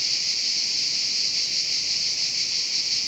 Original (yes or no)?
yes